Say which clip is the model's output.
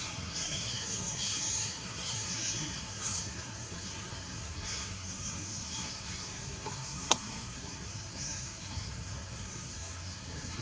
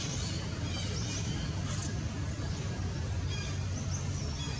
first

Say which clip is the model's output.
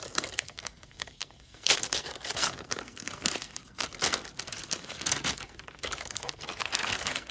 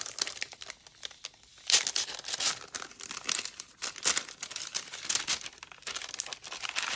first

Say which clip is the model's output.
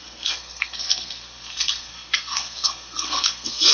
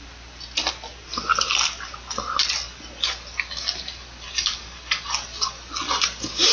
first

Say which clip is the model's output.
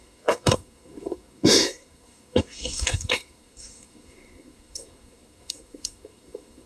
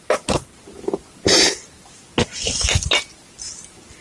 first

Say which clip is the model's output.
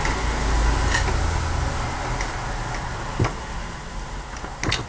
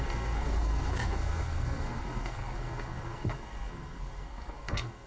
second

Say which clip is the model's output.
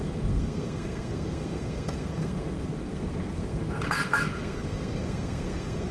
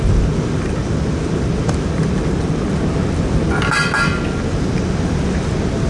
first